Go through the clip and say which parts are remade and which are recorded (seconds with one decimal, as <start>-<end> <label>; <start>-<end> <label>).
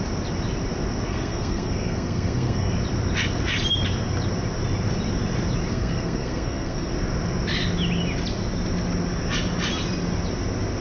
0.0-1.1 recorded; 1.1-2.7 remade; 2.7-5.7 recorded; 5.7-6.9 remade; 6.9-10.8 recorded